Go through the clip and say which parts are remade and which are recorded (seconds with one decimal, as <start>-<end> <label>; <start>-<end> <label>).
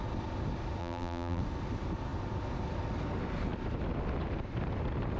0.0-0.8 recorded; 0.8-1.4 remade; 1.4-5.2 recorded